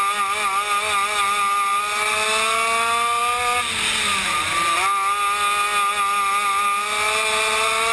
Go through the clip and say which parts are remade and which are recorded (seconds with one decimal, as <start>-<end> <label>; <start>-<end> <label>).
0.0-7.9 recorded